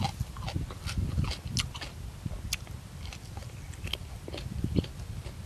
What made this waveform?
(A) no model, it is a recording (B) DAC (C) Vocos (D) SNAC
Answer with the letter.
A